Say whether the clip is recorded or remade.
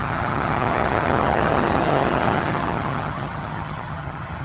remade